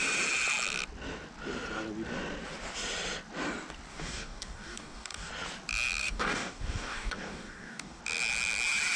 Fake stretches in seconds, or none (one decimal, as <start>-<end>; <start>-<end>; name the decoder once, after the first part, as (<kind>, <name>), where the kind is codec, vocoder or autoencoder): 3.9-5.3 (codec, DAC); 6.0-8.0